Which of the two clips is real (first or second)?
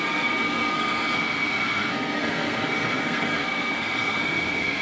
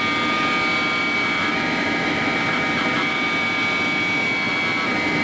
second